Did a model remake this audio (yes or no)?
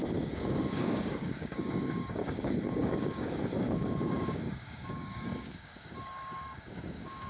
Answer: yes